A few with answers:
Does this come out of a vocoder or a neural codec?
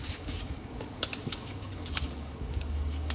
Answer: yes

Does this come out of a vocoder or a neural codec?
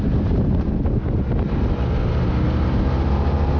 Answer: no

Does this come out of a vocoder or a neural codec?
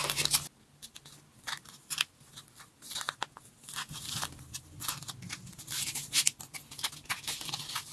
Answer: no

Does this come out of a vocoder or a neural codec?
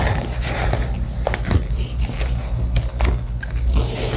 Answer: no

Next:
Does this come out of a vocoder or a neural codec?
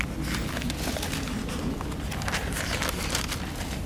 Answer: no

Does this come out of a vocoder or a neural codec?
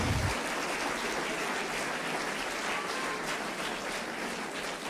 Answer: no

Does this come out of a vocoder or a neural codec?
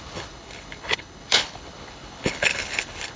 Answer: yes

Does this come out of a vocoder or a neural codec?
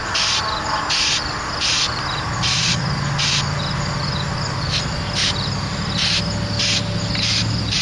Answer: no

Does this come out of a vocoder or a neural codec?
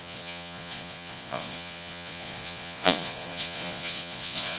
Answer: yes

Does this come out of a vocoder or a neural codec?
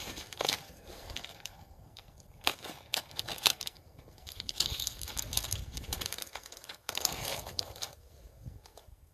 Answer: yes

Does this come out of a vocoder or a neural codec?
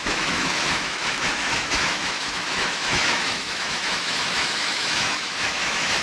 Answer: yes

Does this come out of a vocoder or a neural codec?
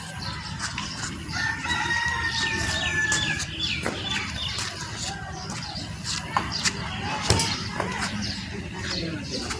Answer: yes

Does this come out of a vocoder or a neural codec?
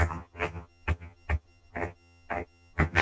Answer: yes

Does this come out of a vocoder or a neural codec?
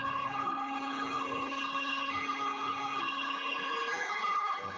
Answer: yes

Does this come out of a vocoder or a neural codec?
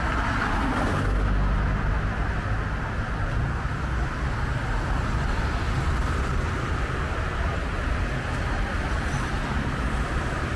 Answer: no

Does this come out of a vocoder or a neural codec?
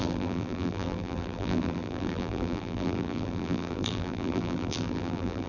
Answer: yes